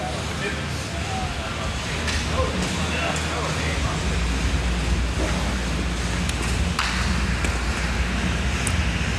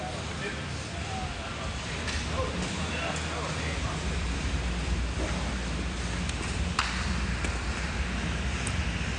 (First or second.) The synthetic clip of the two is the second